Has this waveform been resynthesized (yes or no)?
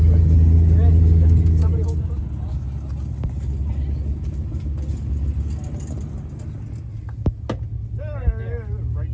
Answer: no